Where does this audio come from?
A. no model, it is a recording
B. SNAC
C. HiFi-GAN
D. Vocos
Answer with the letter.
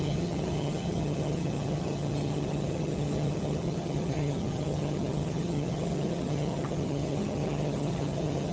C